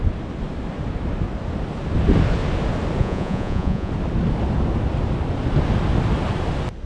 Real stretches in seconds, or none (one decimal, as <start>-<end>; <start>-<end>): 0.0-3.0; 3.9-6.9